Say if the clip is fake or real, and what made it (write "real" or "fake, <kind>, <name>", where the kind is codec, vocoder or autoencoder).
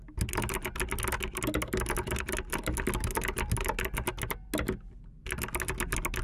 real